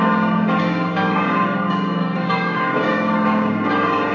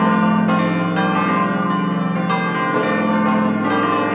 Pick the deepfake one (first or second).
first